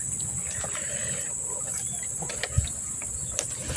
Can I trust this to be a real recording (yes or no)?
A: yes